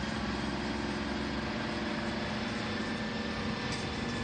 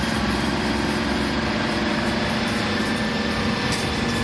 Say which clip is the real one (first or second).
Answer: first